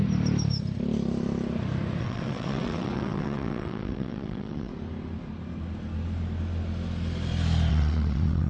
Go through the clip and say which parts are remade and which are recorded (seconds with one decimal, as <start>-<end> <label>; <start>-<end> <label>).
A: 0.0-2.0 recorded; 2.0-4.7 remade; 4.7-7.7 recorded; 7.7-8.5 remade